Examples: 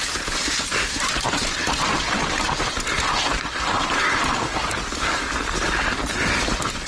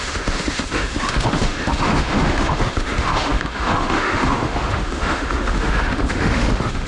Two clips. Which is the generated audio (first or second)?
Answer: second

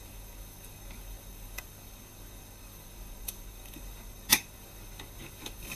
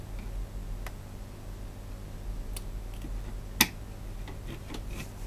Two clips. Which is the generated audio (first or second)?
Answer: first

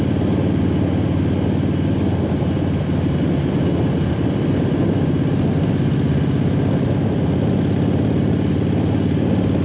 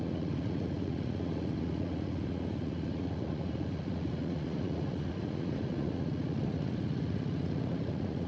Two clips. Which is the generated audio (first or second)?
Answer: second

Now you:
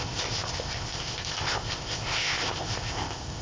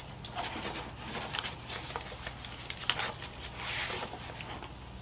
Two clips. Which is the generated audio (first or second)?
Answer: first